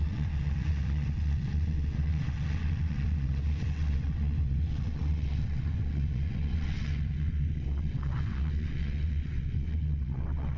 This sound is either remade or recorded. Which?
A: remade